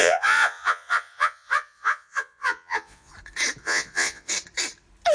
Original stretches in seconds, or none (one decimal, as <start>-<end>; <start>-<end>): 3.1-3.6; 4.3-5.1